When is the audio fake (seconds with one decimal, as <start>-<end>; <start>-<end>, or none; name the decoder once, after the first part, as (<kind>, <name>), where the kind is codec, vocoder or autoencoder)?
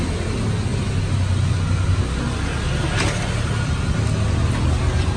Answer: none